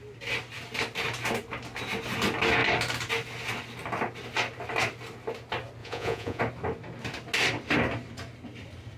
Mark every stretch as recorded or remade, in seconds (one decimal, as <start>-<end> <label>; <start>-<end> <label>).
0.0-5.8 recorded; 5.8-6.4 remade; 6.4-9.0 recorded